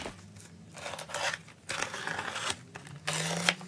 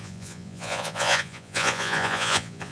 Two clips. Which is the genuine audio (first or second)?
first